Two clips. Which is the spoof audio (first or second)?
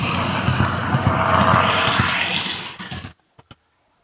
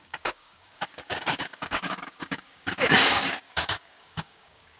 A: second